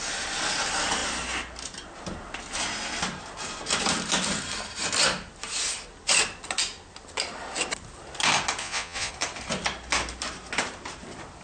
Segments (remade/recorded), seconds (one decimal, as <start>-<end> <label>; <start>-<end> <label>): 0.0-8.6 recorded; 8.6-9.1 remade; 9.1-11.4 recorded